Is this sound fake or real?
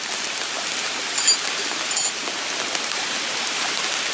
real